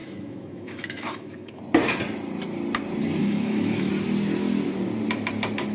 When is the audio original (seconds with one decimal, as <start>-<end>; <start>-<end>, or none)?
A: 1.6-3.2; 3.9-5.7